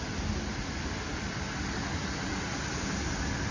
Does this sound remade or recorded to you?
recorded